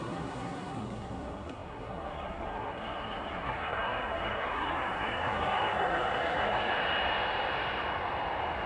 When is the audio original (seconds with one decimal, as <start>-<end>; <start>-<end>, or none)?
6.7-8.7